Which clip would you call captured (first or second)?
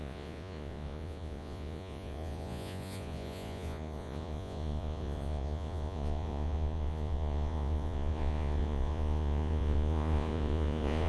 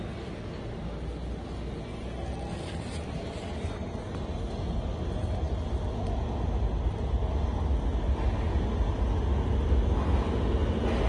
second